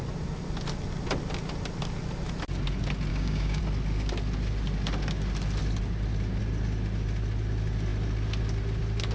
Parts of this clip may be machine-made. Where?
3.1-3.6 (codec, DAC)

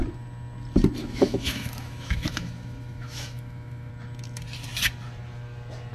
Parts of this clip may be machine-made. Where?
1.0-3.9 (autoencoder, DAC-VAE)

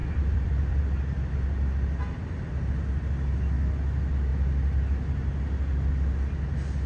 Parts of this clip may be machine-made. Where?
0.0-0.8 (vocoder, BigVGAN v2)

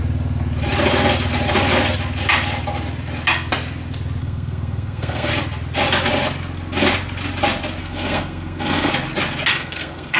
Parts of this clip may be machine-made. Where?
4.2-5.3 (codec, SNAC); 7.8-8.9; 9.5-10.2

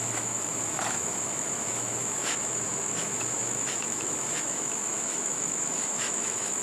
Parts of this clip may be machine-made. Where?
0.0-6.6 (autoencoder, DAC-VAE)